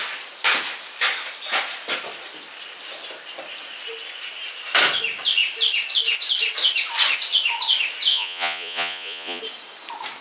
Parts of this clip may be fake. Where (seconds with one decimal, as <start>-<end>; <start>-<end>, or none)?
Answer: 8.1-9.4